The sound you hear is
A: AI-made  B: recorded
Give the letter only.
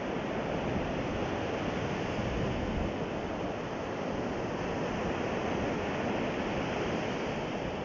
B